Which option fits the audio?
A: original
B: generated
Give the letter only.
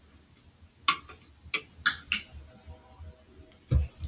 A